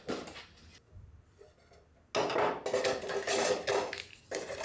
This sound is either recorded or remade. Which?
recorded